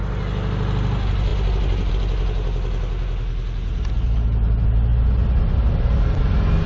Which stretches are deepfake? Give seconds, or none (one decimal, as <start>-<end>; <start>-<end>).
none